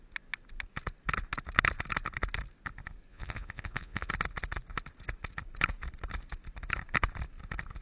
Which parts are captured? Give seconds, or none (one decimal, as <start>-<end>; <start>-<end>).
0.0-3.1; 4.1-7.8